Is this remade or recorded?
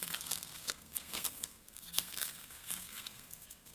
remade